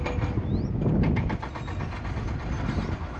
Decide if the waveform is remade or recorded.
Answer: recorded